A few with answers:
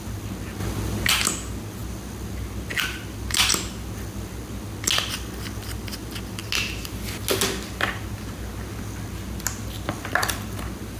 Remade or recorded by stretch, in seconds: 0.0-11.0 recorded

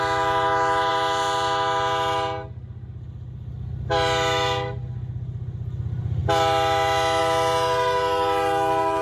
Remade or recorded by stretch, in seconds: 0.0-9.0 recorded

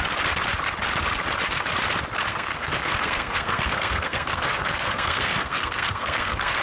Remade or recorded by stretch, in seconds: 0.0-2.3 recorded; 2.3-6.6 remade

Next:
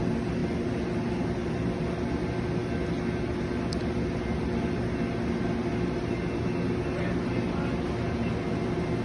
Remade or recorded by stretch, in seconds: 0.0-9.0 recorded

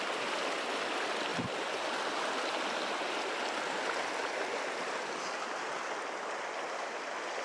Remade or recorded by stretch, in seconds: 0.0-7.4 recorded

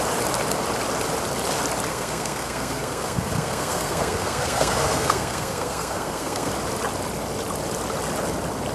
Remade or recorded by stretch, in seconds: 0.0-1.9 recorded; 1.9-6.5 remade; 6.5-8.7 recorded

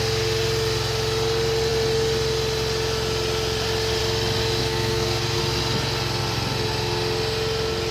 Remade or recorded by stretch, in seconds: 0.0-4.6 recorded; 4.6-5.4 remade; 5.4-7.9 recorded

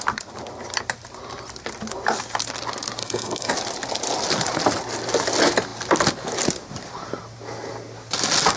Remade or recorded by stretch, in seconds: 0.0-3.0 recorded; 3.0-3.5 remade; 3.5-8.6 recorded